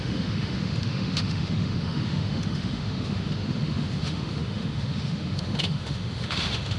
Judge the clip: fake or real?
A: fake